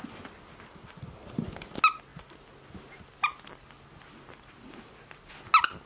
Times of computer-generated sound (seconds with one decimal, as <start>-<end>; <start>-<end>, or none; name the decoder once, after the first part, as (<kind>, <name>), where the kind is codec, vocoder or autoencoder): none